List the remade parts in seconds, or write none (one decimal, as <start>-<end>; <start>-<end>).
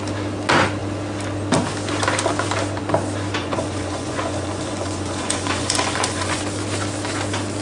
3.4-6.4